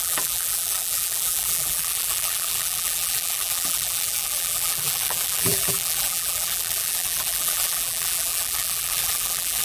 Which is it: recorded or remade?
remade